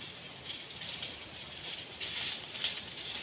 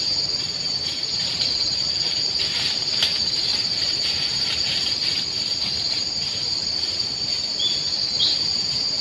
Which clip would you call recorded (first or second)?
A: first